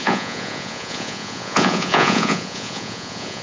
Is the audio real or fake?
fake